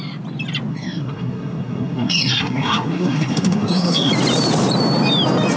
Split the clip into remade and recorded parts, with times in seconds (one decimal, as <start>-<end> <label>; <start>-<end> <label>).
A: 0.0-0.7 recorded; 0.7-4.1 remade; 4.1-5.6 recorded